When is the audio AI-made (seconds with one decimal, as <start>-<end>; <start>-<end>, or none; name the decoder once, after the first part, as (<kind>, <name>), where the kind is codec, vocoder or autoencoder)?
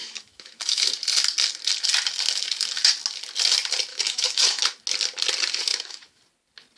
0.0-0.9 (autoencoder, DAC-VAE); 3.9-4.6; 5.7-6.2